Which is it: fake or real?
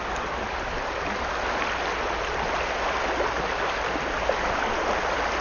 fake